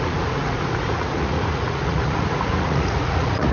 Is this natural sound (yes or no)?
no